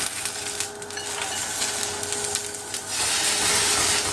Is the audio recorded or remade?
recorded